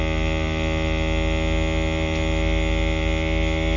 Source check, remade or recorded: recorded